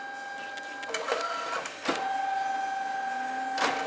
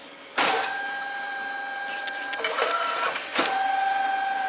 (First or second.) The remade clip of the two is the second